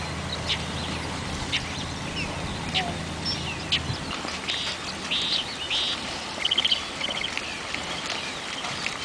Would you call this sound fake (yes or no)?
no